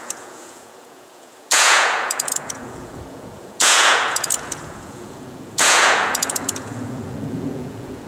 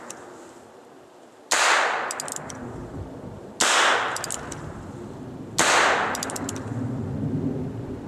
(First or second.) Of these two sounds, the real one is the second